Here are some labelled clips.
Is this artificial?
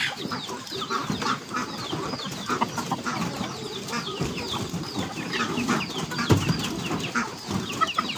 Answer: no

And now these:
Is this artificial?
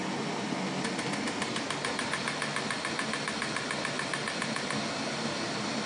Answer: no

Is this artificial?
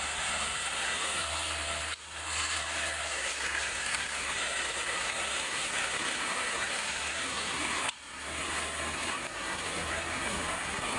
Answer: yes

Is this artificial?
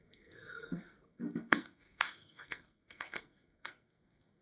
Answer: yes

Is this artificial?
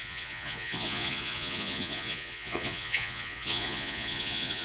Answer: yes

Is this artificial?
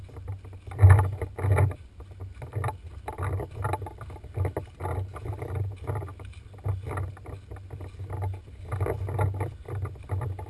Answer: no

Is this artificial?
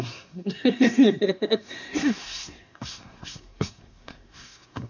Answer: yes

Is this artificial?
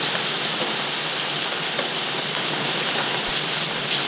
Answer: no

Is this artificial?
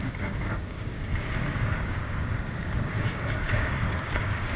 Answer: yes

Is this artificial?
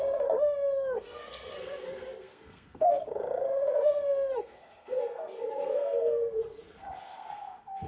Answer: yes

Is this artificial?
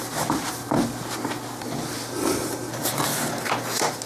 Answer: no